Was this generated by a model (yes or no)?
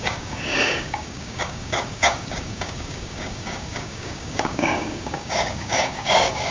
yes